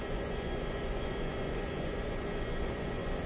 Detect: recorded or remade remade